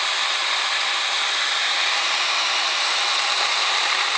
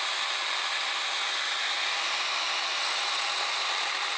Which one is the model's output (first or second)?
first